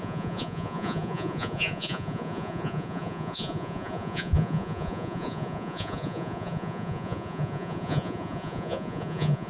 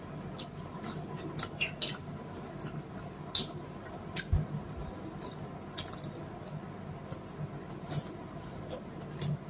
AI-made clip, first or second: first